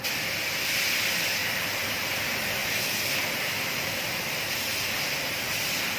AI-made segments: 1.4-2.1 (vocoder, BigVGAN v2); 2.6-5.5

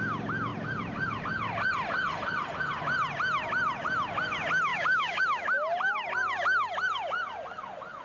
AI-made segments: 4.7-5.2 (codec, DAC)

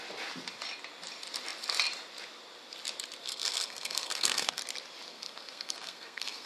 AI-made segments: 3.2-4.6 (codec, SNAC); 5.1-6.5

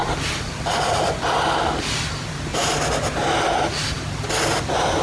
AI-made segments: 0.0-2.5 (vocoder, BigVGAN v2); 4.6-5.0